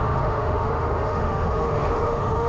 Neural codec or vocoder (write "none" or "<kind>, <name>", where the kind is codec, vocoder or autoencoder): autoencoder, DAC-VAE